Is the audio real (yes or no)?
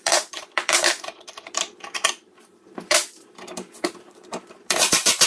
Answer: no